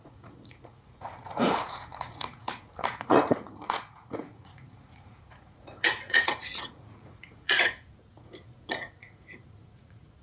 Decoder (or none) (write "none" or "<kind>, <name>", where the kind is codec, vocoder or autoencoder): vocoder, Vocos